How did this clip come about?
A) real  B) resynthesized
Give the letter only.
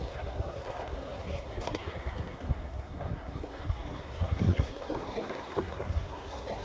B